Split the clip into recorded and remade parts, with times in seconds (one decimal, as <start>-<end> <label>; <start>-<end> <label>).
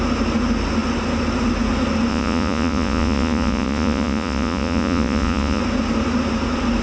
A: 0.0-2.1 recorded; 2.1-5.6 remade; 5.6-6.8 recorded